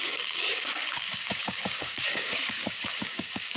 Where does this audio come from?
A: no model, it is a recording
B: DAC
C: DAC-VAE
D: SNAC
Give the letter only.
B